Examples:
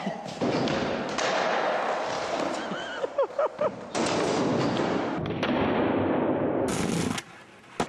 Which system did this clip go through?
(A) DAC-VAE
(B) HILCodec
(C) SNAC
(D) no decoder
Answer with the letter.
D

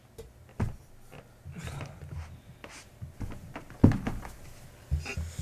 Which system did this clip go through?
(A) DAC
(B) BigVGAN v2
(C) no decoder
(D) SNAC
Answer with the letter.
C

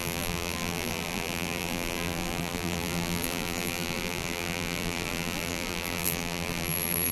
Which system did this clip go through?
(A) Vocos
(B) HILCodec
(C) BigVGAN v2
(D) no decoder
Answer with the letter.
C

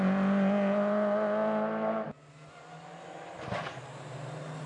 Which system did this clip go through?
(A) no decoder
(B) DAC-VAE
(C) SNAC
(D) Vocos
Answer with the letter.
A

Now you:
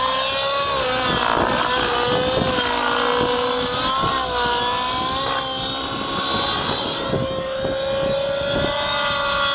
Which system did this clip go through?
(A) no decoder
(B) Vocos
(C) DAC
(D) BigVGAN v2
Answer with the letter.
A